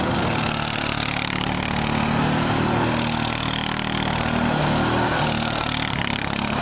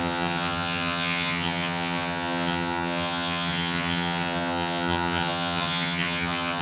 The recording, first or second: first